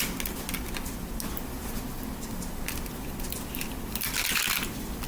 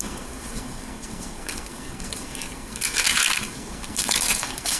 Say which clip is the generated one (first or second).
second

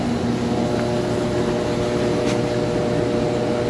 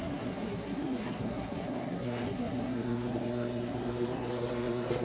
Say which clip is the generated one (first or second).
second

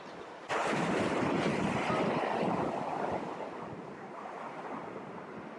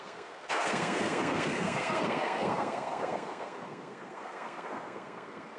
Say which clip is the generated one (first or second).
second